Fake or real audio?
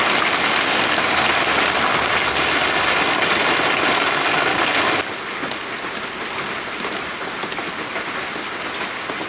real